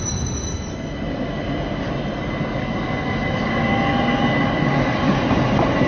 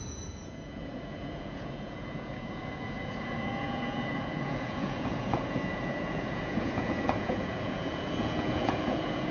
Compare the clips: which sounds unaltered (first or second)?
first